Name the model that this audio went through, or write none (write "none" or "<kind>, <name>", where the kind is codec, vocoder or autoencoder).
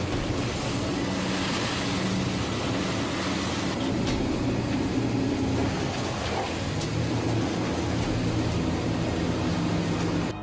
none